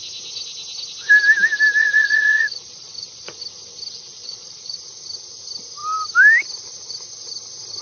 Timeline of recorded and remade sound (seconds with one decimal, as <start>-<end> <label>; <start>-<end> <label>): 0.0-1.8 recorded; 1.8-3.4 remade; 3.4-4.1 recorded; 4.1-4.8 remade; 4.8-7.8 recorded